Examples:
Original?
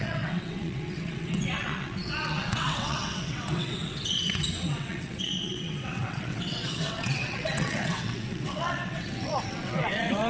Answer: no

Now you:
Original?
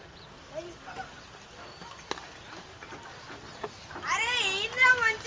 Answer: yes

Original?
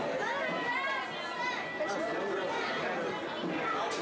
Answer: yes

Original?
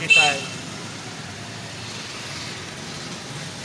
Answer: no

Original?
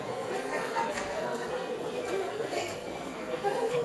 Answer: no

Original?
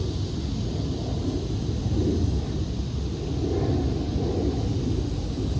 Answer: yes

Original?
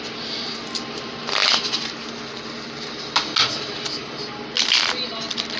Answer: yes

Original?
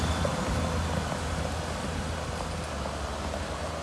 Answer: yes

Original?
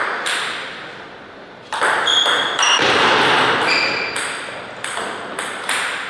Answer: yes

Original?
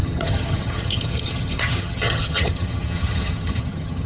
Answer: no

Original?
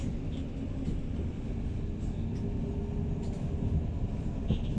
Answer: yes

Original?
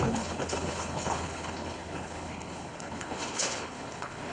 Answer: no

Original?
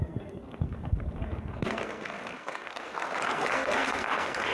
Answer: no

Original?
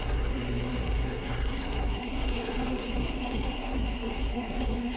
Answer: no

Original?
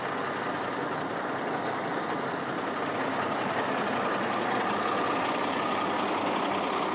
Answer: yes